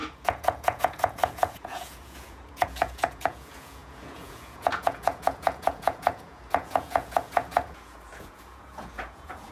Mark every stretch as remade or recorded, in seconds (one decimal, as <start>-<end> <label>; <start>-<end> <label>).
0.0-9.5 remade